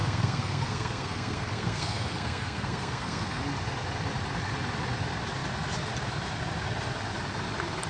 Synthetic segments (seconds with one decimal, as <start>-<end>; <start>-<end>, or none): 0.0-3.4